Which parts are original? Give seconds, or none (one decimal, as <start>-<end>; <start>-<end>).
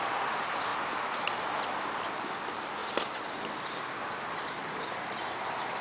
0.0-5.8